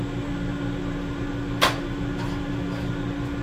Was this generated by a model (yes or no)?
no